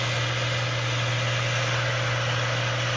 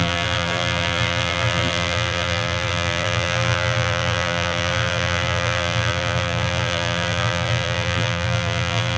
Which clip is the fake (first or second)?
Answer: second